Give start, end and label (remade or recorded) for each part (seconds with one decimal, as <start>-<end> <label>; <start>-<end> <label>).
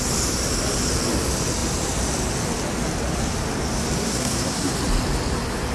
0.0-4.0 recorded; 4.0-4.7 remade; 4.7-5.7 recorded